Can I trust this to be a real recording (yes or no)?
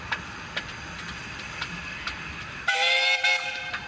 yes